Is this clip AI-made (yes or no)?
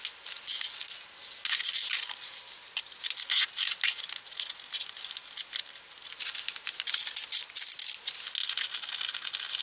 no